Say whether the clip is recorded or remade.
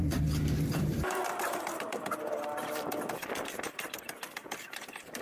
remade